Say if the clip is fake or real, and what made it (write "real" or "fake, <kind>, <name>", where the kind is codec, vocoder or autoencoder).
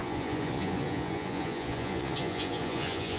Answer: fake, vocoder, Vocos